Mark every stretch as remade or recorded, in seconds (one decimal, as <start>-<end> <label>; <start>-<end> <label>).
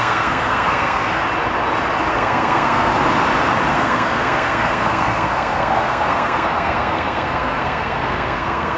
0.0-1.2 remade; 1.2-2.1 recorded; 2.1-2.9 remade; 2.9-3.7 recorded; 3.7-8.8 remade